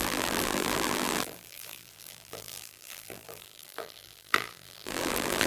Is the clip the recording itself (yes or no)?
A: no